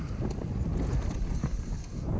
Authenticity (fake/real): real